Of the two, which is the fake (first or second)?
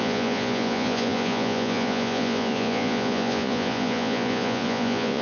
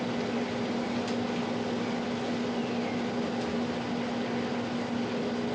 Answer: first